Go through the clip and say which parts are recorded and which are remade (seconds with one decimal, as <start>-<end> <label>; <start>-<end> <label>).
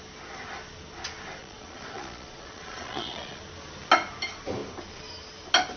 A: 0.0-1.4 recorded; 1.4-3.4 remade; 3.4-5.8 recorded